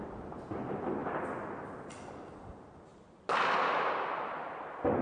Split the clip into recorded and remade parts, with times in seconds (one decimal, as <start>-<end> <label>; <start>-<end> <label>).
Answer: 0.0-5.0 recorded

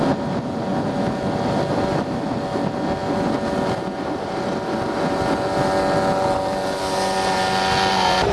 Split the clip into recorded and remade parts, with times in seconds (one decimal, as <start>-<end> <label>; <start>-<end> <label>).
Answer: 0.0-8.3 recorded

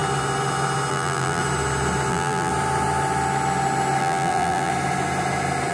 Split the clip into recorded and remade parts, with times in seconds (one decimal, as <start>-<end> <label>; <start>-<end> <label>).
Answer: 0.0-0.9 recorded; 0.9-1.4 remade; 1.4-2.1 recorded; 2.1-2.5 remade; 2.5-4.0 recorded; 4.0-4.7 remade; 4.7-5.7 recorded

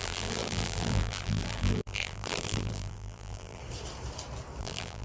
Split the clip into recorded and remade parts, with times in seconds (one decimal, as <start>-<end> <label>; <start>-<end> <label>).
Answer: 0.0-3.6 remade; 3.6-4.6 recorded; 4.6-5.0 remade

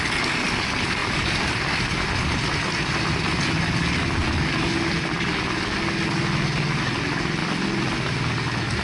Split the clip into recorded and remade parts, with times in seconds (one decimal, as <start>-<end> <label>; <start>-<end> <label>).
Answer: 0.0-8.8 recorded

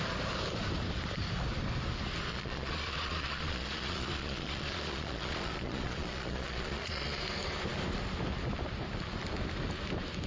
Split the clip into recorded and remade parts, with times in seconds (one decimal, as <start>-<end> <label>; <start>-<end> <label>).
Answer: 0.0-2.3 recorded; 2.3-7.2 remade; 7.2-10.3 recorded

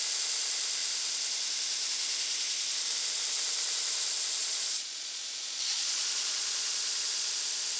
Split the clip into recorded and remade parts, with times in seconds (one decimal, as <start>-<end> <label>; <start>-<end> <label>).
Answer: 0.0-4.4 recorded; 4.4-5.2 remade; 5.2-5.7 recorded; 5.7-7.3 remade; 7.3-7.8 recorded